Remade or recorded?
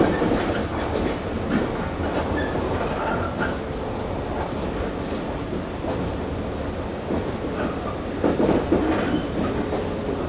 recorded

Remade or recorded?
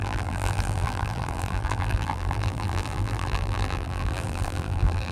remade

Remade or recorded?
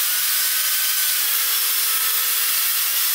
recorded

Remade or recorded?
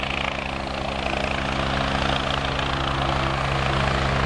recorded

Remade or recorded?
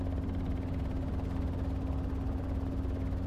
recorded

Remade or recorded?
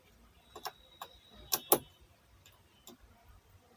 recorded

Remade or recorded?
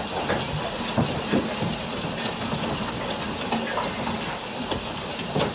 remade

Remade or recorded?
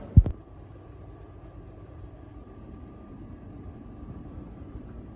remade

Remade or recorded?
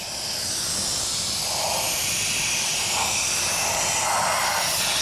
recorded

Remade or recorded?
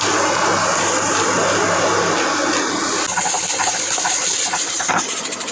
recorded